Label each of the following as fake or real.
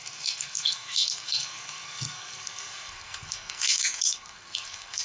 fake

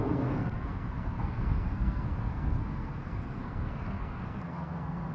fake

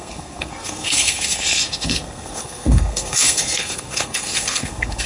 fake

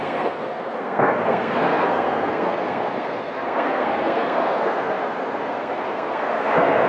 fake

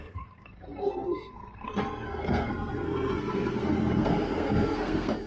fake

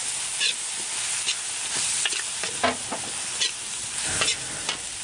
real